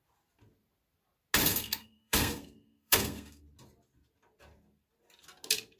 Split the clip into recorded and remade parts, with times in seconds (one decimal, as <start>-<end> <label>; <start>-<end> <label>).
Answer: 0.0-1.4 recorded; 1.4-3.4 remade; 3.4-5.8 recorded